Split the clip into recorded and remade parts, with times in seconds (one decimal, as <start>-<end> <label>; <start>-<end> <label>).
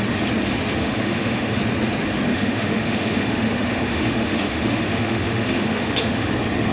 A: 0.0-0.8 recorded; 0.8-1.6 remade; 1.6-2.3 recorded; 2.3-6.3 remade; 6.3-6.7 recorded